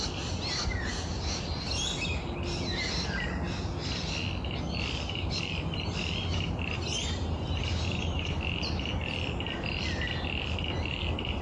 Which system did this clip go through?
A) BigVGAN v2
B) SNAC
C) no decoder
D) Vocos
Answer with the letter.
C